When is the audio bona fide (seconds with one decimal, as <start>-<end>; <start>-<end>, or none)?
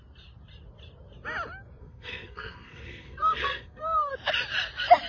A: 0.0-1.8; 4.1-5.1